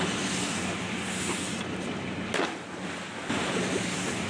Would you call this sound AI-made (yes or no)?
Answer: no